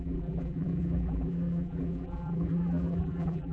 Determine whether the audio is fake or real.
fake